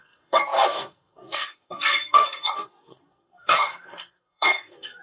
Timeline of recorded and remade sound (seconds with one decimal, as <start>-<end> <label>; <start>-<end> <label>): 0.0-5.0 remade